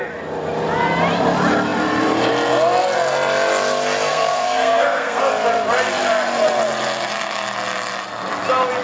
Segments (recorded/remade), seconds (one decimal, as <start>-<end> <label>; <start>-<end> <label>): 0.0-4.1 recorded; 4.1-5.2 remade; 5.2-8.8 recorded

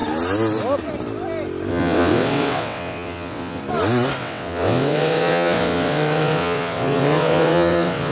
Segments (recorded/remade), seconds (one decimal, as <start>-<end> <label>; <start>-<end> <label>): 0.0-1.7 recorded; 1.7-3.6 remade; 3.6-4.2 recorded; 4.2-8.1 remade

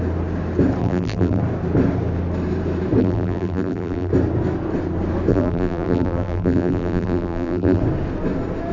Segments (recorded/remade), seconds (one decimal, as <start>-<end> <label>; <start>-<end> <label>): 0.0-0.8 recorded; 0.8-1.4 remade; 1.4-3.0 recorded; 3.0-4.1 remade; 4.1-5.3 recorded; 5.3-7.8 remade; 7.8-8.7 recorded

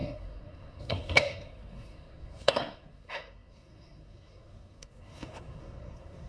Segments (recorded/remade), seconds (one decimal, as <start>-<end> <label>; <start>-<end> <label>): 0.0-6.3 remade

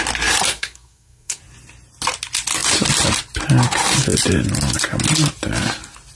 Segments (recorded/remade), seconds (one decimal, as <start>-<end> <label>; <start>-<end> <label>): 0.0-0.5 recorded; 0.5-1.4 remade; 1.4-6.1 recorded

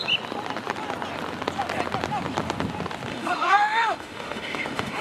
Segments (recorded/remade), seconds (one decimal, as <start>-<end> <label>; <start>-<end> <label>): 0.0-3.1 recorded; 3.1-5.0 remade

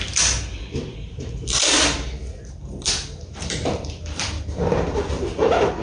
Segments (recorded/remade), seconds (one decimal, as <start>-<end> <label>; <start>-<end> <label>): 0.0-0.9 recorded; 0.9-4.4 remade; 4.4-5.8 recorded